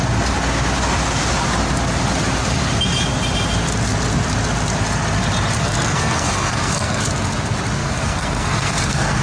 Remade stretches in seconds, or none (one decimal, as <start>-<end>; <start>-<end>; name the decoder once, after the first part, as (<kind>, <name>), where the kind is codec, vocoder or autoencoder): 5.6-7.0 (codec, SNAC); 7.8-9.2